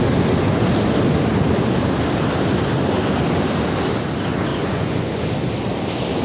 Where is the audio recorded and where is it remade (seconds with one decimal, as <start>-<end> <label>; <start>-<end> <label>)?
0.0-4.5 recorded; 4.5-5.2 remade; 5.2-6.2 recorded